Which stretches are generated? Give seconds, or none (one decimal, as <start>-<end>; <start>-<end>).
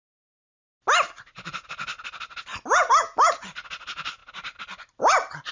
none